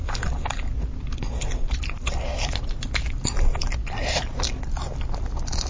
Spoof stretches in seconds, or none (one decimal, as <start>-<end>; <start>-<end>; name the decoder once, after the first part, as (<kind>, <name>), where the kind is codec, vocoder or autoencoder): none